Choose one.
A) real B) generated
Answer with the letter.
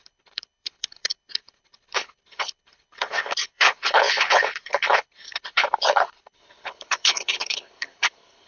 B